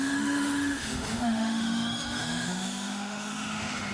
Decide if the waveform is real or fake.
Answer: fake